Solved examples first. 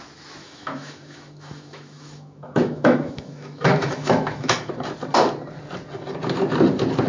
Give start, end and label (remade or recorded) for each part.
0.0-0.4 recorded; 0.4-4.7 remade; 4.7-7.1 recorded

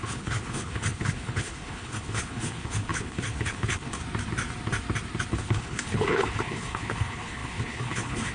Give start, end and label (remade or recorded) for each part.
0.0-4.0 remade; 4.0-5.3 recorded; 5.3-8.3 remade

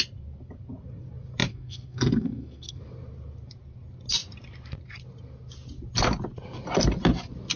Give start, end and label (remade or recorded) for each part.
0.0-1.5 recorded; 1.5-2.8 remade; 2.8-7.6 recorded

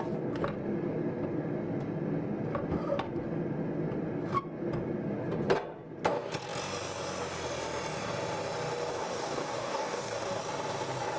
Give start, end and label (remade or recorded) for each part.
0.0-8.9 recorded; 8.9-10.4 remade; 10.4-11.2 recorded

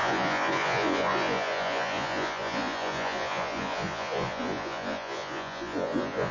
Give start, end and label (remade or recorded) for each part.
0.0-6.3 remade